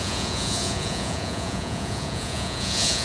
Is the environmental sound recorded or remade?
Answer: remade